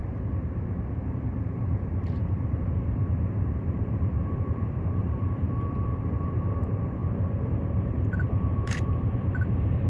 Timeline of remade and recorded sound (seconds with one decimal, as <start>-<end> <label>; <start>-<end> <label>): 0.0-1.0 recorded; 1.0-7.0 remade; 7.0-7.5 recorded; 7.5-9.9 remade